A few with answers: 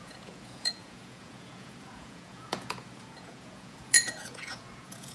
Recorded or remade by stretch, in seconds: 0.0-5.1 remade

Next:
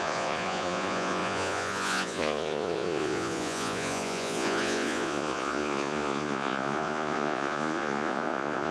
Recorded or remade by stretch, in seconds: 0.0-8.7 remade

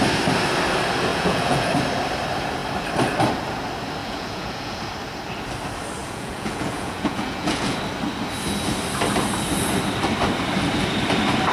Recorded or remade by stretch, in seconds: 0.0-1.1 recorded; 1.1-1.7 remade; 1.7-4.0 recorded; 4.0-4.8 remade; 4.8-6.0 recorded; 6.0-7.8 remade; 7.8-11.5 recorded

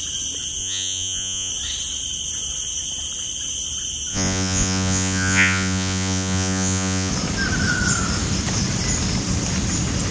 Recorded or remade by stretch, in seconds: 0.0-0.6 recorded; 0.6-1.5 remade; 1.5-4.1 recorded; 4.1-7.1 remade; 7.1-10.1 recorded

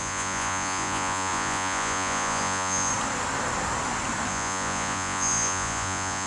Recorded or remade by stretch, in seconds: 0.0-2.9 remade; 2.9-4.3 recorded; 4.3-6.3 remade